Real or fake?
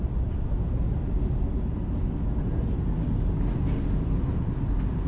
real